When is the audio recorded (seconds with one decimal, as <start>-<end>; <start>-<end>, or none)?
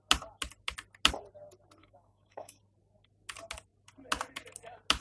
0.0-1.8; 2.6-5.0